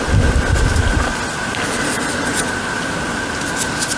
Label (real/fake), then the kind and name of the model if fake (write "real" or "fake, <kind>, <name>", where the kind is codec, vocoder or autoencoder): real